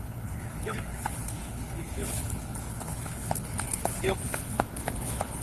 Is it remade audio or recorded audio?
remade